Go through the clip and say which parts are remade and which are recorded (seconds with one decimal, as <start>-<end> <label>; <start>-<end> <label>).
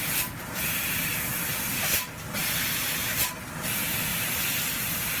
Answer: 0.0-4.1 recorded; 4.1-5.2 remade